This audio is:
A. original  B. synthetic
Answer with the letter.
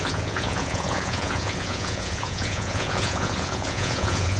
B